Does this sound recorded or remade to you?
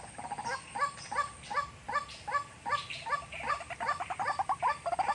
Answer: recorded